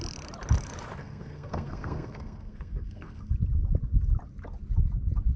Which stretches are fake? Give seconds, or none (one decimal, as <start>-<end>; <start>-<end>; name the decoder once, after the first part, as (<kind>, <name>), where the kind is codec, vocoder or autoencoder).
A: 1.0-3.3 (codec, SNAC)